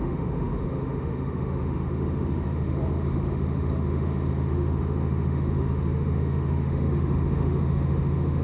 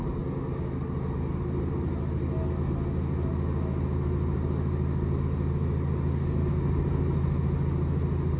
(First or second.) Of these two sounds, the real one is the second